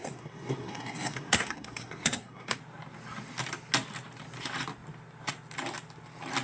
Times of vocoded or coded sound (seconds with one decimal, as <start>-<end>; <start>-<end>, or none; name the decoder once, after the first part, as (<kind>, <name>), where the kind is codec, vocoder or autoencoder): 0.0-2.6 (codec, SNAC)